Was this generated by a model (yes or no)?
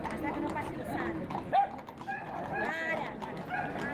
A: no